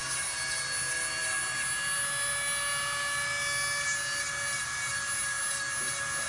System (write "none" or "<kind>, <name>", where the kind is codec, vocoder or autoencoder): none